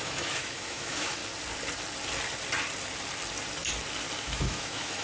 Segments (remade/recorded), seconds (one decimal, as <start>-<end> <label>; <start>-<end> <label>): 0.0-1.2 remade; 1.2-4.2 recorded; 4.2-5.0 remade